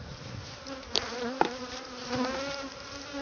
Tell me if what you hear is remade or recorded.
recorded